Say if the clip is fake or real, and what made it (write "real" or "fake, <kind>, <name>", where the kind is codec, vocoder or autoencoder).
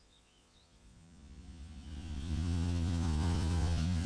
fake, vocoder, Vocos